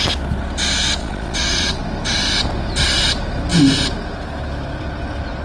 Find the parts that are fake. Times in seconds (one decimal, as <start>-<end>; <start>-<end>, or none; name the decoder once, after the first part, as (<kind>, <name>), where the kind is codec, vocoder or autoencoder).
1.0-1.8 (vocoder, Vocos)